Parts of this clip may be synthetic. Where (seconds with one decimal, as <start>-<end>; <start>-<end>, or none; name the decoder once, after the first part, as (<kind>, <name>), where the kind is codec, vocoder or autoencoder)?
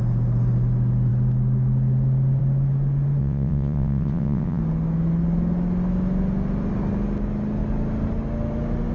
3.2-4.6 (vocoder, WaveNeXt)